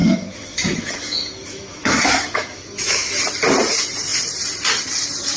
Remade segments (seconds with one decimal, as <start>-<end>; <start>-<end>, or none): 0.0-3.2